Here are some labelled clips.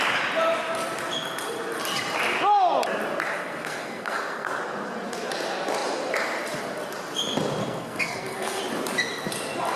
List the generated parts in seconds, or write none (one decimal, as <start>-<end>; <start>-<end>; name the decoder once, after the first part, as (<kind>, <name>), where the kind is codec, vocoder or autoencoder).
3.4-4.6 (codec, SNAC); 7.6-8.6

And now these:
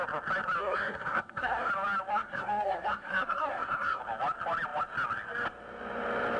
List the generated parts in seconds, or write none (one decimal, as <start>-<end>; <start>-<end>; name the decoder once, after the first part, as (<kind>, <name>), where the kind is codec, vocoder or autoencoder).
0.6-1.7 (codec, SNAC); 2.1-4.0

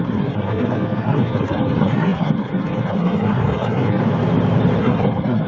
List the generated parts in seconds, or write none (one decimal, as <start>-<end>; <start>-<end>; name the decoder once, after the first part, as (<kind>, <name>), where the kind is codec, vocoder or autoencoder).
0.0-4.0 (codec, SNAC); 4.8-5.5